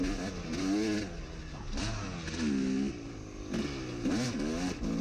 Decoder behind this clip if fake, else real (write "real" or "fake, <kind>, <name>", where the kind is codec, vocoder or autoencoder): real